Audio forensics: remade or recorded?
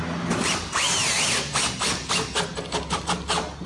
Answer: recorded